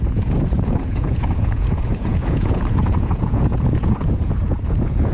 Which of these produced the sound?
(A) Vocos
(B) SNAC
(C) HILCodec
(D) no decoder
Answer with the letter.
A